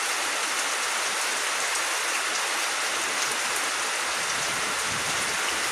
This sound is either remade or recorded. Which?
recorded